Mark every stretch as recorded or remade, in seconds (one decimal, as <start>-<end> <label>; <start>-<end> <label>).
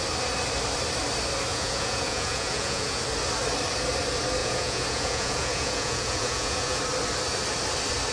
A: 0.0-1.5 recorded; 1.5-3.0 remade; 3.0-4.4 recorded; 4.4-6.8 remade; 6.8-8.1 recorded